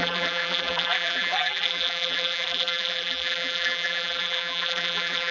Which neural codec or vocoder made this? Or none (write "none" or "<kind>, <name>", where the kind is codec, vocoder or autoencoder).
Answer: vocoder, BigVGAN v2